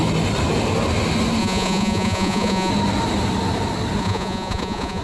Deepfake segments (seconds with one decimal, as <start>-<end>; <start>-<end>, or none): 1.4-2.7; 4.0-5.0